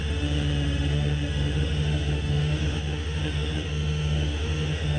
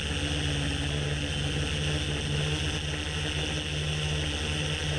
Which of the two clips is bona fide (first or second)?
second